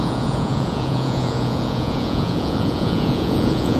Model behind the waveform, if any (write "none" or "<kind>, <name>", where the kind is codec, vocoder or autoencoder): vocoder, Vocos